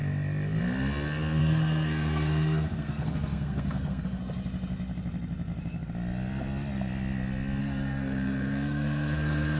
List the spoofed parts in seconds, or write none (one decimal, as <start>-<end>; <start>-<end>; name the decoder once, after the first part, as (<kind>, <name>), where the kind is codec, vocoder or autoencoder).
1.4-4.2 (codec, SNAC); 7.6-9.6